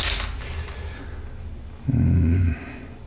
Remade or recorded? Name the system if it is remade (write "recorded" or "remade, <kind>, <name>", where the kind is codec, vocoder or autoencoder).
recorded